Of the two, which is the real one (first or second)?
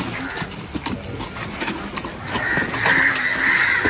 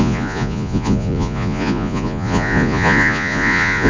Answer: first